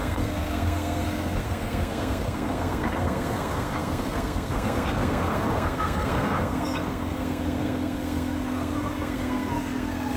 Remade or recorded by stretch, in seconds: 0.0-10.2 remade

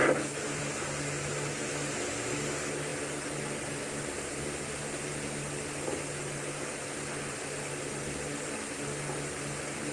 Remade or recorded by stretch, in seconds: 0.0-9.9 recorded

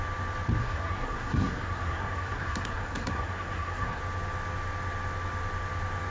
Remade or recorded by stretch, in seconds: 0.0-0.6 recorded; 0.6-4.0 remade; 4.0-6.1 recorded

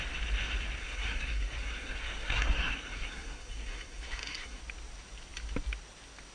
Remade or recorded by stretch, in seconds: 0.0-0.8 recorded; 0.8-4.6 remade; 4.6-6.3 recorded

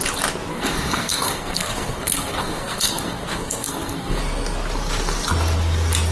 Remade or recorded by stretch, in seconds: 0.0-0.5 recorded; 0.5-4.2 remade; 4.2-6.1 recorded

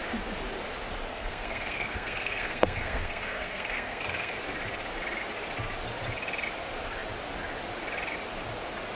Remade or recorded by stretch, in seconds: 0.0-1.1 recorded; 1.1-4.3 remade; 4.3-8.9 recorded